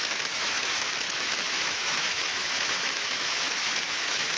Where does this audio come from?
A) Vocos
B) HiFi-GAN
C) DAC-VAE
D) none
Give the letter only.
C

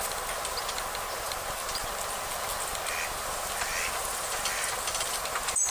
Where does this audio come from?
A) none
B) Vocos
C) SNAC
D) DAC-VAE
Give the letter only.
A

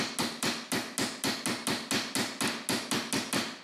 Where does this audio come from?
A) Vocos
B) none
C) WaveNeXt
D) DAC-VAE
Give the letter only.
B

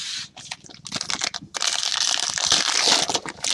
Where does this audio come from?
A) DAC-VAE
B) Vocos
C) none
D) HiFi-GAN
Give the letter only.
C